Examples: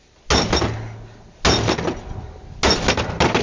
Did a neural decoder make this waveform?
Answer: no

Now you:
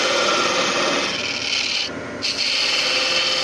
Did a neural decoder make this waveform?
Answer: no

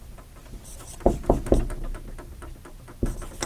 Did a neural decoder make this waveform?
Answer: no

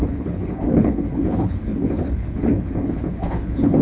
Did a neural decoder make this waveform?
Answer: yes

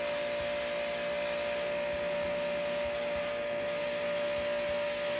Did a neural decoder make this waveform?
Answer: no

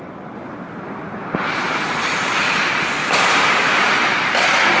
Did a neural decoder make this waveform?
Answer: yes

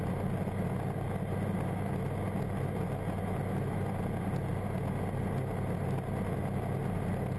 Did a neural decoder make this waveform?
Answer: no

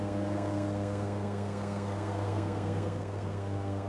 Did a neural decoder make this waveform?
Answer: yes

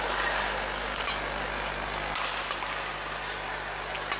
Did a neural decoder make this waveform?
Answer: no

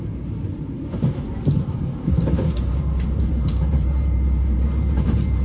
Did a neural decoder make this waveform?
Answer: yes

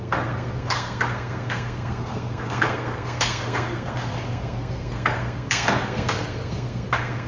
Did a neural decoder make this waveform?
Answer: yes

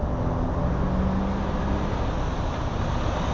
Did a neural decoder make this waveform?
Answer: no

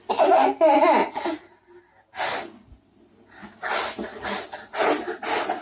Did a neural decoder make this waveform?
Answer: no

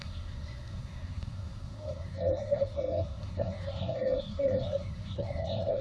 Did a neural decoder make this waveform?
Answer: yes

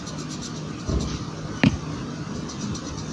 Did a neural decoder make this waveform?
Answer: no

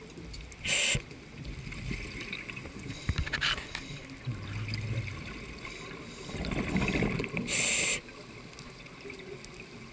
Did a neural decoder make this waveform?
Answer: no